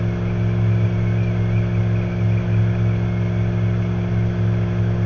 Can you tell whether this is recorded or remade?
recorded